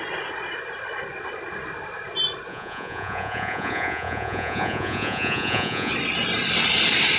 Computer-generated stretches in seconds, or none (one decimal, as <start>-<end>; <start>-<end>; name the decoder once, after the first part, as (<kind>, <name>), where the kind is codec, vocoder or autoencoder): 2.5-5.9 (vocoder, Vocos)